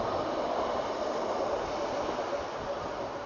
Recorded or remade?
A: recorded